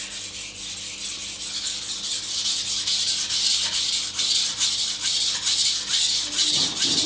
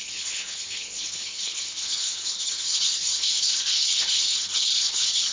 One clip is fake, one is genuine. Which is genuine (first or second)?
first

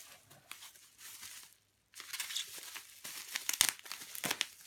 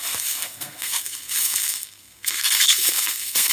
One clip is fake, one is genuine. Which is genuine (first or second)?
first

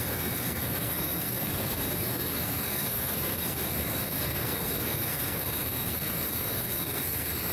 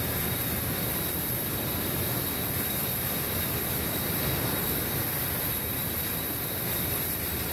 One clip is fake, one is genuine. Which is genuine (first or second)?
second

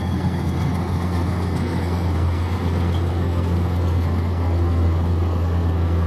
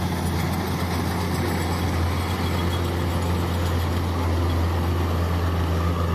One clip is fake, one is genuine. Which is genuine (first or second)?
second